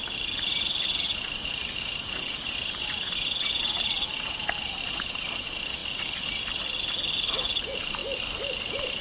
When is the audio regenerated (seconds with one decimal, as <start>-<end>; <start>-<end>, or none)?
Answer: 0.5-5.8; 7.6-8.0; 8.6-9.0